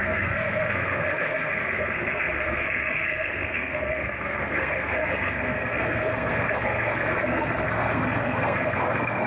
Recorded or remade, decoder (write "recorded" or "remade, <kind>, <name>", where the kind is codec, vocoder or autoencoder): remade, codec, SNAC